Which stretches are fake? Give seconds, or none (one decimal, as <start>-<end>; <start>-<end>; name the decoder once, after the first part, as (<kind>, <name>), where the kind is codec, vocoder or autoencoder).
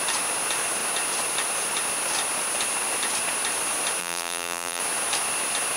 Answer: 4.0-4.8 (vocoder, BigVGAN v2)